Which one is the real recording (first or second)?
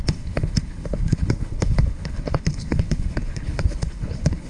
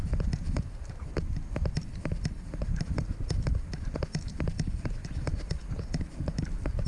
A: second